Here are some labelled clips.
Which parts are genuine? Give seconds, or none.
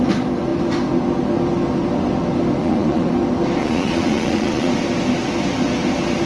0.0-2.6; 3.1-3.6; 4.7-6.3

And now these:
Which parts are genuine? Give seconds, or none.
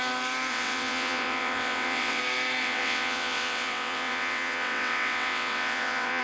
0.0-0.5; 2.2-2.6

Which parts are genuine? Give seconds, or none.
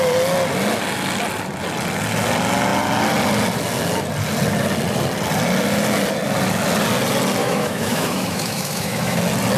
0.0-7.4; 9.2-9.6